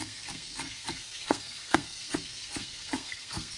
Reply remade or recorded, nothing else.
remade